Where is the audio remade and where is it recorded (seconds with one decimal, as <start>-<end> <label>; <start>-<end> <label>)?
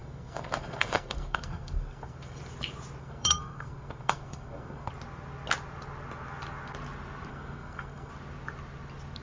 0.0-2.4 remade; 2.4-3.0 recorded; 3.0-4.9 remade; 4.9-7.3 recorded; 7.3-8.1 remade; 8.1-9.2 recorded